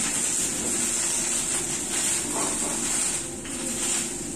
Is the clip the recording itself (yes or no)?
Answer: yes